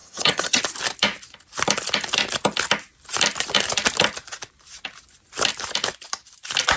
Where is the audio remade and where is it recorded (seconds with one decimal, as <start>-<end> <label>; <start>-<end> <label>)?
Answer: 0.0-0.6 remade; 0.6-6.8 recorded